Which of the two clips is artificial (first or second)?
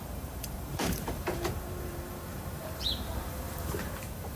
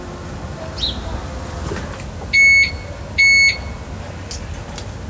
first